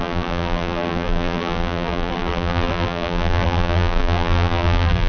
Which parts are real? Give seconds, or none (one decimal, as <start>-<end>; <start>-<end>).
none